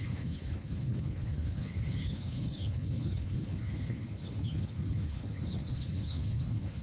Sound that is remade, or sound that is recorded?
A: remade